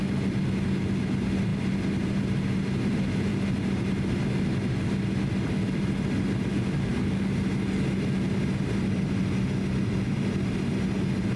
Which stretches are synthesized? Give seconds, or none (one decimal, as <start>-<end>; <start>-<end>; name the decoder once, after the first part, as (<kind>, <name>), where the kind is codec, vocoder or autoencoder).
none